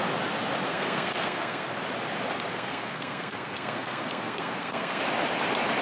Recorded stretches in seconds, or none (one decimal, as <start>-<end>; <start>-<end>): 0.0-0.6; 1.7-2.5; 5.0-5.8